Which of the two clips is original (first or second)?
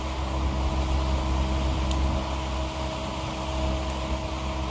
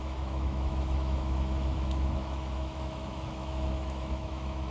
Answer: first